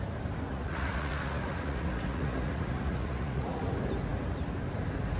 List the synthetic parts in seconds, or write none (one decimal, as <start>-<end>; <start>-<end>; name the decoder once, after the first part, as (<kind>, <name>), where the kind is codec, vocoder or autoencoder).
0.5-3.6 (vocoder, Vocos)